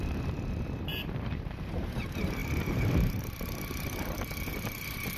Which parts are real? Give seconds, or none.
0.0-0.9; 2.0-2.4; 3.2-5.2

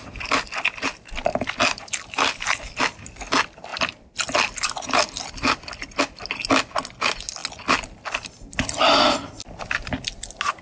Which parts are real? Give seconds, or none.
0.0-1.3; 1.8-3.7; 6.0-10.6